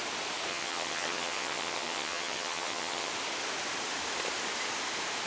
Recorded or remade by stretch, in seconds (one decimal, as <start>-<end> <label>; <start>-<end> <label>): 0.0-0.5 recorded; 0.5-3.1 remade; 3.1-5.3 recorded